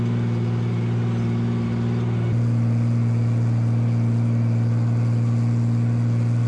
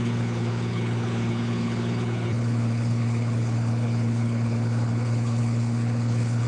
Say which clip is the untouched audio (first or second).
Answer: first